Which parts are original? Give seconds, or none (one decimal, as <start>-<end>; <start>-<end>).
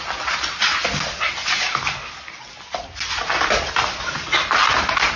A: 0.0-5.2